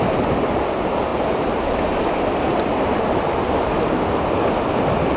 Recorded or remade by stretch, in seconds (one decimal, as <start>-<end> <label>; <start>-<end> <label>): 0.0-5.2 recorded